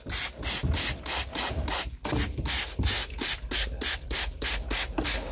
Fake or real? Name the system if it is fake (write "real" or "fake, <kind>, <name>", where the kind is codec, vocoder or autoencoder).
real